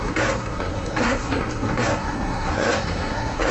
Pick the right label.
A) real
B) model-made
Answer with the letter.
B